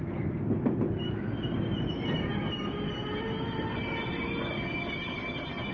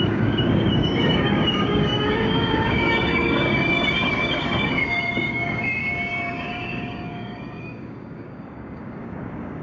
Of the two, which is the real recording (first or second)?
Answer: first